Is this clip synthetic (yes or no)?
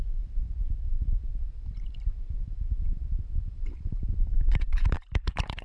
yes